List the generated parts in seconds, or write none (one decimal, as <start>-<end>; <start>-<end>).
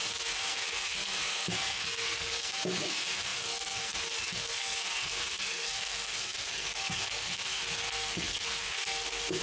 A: 0.0-9.4